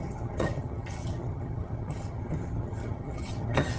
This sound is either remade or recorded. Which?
remade